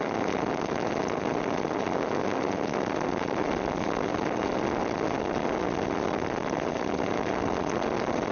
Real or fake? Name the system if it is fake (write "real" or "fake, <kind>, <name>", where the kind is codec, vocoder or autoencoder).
real